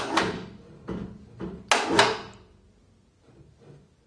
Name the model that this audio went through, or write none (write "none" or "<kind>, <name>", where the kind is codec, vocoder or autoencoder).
none